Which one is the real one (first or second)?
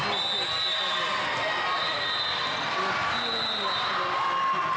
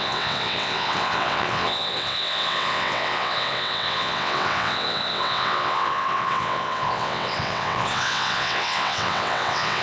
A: first